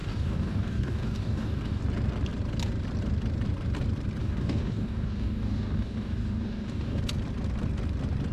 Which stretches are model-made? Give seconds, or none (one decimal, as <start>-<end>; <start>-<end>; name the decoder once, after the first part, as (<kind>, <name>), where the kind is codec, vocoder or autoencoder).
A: 0.0-1.8 (codec, DAC); 4.2-7.0

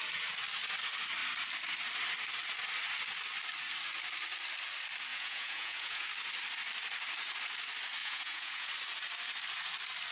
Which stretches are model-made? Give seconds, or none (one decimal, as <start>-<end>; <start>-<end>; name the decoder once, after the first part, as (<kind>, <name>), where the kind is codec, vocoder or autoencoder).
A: 5.1-6.1 (vocoder, Vocos); 8.0-8.7

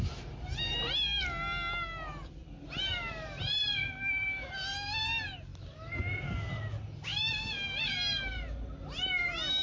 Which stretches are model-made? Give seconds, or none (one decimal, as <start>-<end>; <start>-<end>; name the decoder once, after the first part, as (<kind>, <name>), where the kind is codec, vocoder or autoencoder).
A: none

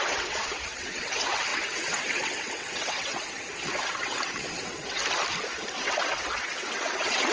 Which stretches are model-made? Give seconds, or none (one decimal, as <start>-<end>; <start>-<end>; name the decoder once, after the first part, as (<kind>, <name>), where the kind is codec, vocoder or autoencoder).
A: 0.0-5.0 (vocoder, WaveNeXt); 5.8-7.3

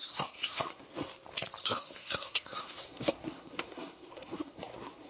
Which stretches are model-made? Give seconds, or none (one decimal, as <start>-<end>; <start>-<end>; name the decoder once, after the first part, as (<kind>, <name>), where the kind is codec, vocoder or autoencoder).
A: 0.0-0.9 (codec, SNAC); 1.6-5.1

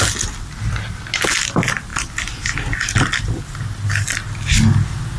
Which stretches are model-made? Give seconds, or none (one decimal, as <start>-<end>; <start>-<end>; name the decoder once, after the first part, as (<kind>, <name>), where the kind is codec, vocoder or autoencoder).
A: none

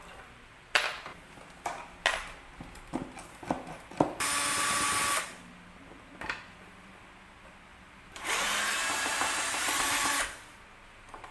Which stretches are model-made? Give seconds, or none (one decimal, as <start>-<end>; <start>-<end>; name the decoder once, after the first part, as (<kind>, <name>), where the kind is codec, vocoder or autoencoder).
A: 7.7-8.6 (vocoder, BigVGAN v2)

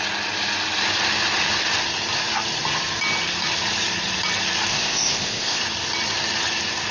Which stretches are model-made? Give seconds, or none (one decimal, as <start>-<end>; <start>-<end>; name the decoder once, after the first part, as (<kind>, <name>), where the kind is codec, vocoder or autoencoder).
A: 4.7-5.6 (codec, ZipCodec)